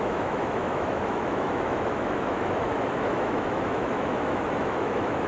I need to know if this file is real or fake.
fake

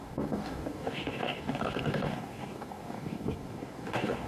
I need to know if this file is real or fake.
fake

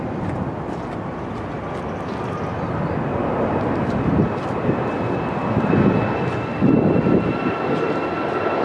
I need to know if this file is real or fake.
real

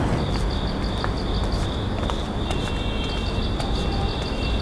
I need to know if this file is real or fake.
real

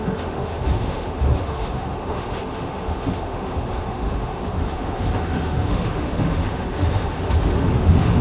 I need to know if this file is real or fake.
fake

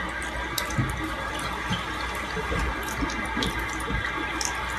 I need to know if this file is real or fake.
real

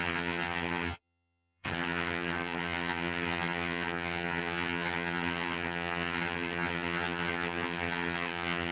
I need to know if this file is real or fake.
fake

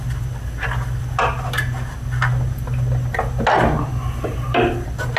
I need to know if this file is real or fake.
real